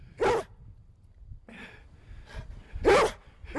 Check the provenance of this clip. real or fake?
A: real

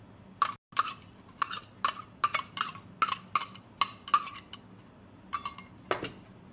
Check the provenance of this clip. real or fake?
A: real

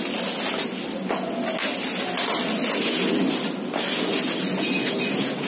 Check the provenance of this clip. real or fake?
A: real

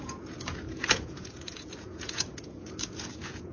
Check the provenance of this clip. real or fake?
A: fake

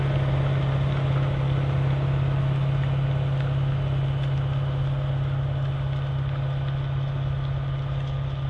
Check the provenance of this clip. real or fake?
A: real